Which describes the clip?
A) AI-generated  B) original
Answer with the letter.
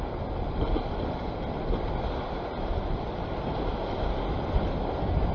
B